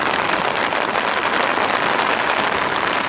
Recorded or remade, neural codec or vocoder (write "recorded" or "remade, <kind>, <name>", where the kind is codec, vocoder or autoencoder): recorded